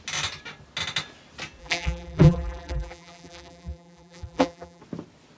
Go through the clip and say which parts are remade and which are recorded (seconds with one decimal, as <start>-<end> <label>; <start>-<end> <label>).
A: 0.0-1.6 recorded; 1.6-4.8 remade; 4.8-5.4 recorded